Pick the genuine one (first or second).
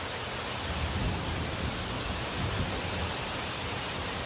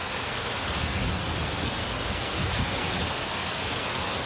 first